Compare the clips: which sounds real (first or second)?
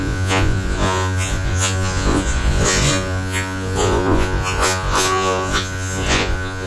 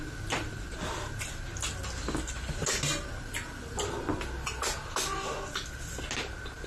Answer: second